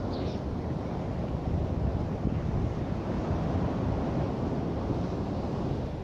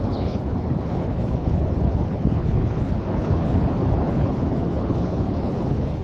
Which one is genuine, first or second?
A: first